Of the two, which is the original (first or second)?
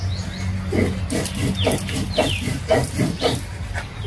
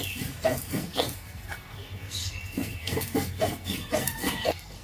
first